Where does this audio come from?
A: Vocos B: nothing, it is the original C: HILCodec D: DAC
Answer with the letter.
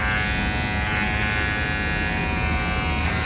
B